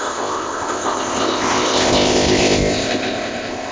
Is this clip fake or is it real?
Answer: fake